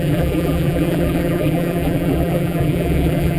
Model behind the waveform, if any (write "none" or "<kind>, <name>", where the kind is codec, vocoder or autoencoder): vocoder, BigVGAN v2